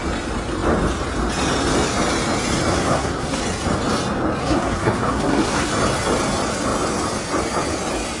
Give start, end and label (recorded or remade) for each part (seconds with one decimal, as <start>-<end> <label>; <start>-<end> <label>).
0.0-2.7 recorded; 2.7-3.4 remade; 3.4-4.4 recorded; 4.4-5.7 remade; 5.7-8.2 recorded